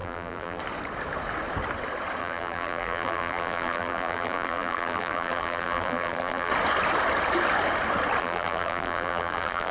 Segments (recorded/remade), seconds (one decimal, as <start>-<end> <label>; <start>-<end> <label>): 0.0-0.6 remade; 0.6-2.2 recorded; 2.2-6.5 remade; 6.5-8.2 recorded; 8.2-9.7 remade